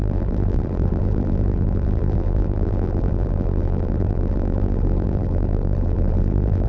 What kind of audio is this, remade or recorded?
remade